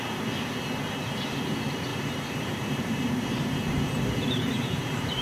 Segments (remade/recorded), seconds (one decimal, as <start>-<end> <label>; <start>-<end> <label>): 0.0-1.9 recorded; 1.9-5.2 remade